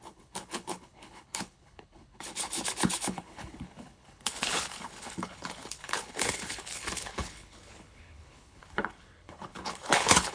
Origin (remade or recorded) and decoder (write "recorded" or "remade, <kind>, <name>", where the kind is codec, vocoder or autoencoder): remade, codec, HILCodec